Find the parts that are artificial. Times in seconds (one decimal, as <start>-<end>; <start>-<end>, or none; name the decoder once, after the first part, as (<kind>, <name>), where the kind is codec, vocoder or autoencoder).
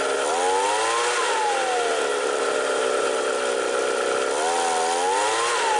2.1-3.3 (vocoder, BigVGAN v2)